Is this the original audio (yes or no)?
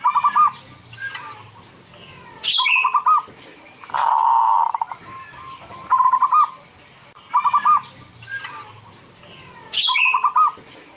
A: yes